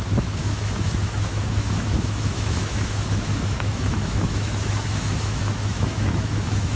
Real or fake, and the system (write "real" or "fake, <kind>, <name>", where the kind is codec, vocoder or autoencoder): fake, autoencoder, DAC-VAE